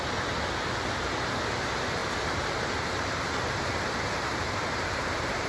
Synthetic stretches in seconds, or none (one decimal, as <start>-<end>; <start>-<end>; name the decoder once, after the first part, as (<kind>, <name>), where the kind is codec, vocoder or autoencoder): 2.0-5.5 (vocoder, BigVGAN v2)